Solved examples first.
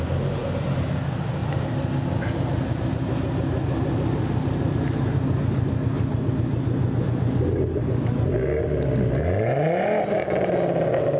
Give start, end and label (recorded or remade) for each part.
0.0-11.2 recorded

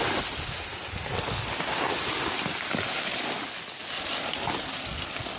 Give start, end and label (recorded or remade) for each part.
0.0-5.4 recorded

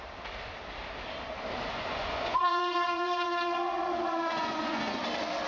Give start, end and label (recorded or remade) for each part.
0.0-1.7 recorded; 1.7-5.0 remade; 5.0-5.5 recorded

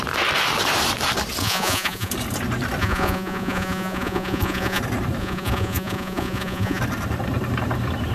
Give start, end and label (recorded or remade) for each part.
0.0-1.4 recorded; 1.4-2.1 remade; 2.1-2.8 recorded; 2.8-4.8 remade; 4.8-5.2 recorded; 5.2-6.8 remade; 6.8-8.1 recorded

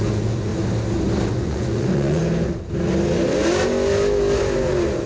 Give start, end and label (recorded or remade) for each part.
0.0-0.5 remade; 0.5-1.3 recorded; 1.3-2.2 remade; 2.2-5.1 recorded